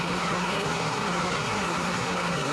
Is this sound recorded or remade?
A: remade